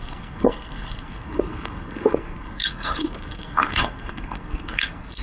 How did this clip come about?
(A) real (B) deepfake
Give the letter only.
B